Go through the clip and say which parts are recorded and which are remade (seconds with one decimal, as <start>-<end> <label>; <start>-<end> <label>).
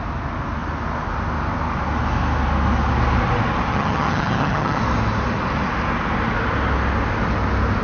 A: 0.0-3.7 recorded; 3.7-4.8 remade; 4.8-7.8 recorded